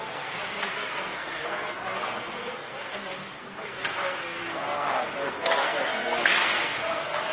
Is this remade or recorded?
remade